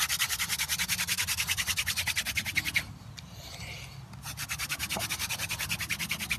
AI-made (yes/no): no